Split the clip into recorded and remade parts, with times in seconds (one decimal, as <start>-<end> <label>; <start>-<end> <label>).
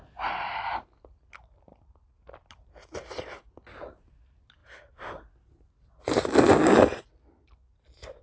0.0-8.2 recorded